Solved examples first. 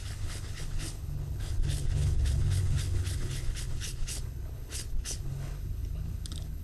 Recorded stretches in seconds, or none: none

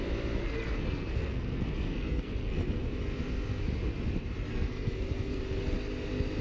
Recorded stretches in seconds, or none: 0.0-0.4; 2.8-4.5; 5.4-6.4

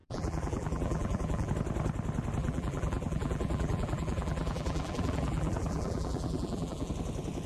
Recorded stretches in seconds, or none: 1.5-2.4; 6.9-7.5